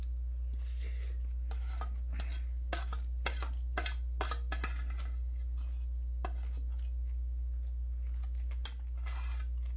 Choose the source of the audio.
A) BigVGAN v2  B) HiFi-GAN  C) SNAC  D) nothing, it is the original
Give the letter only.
D